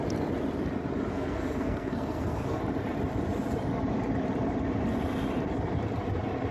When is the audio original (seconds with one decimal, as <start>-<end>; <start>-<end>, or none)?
0.0-1.1; 2.6-6.5